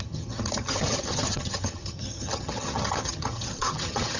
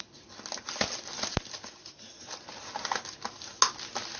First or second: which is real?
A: second